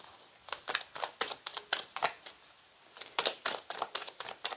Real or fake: real